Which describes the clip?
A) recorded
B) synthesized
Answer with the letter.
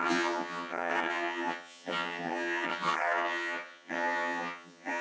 B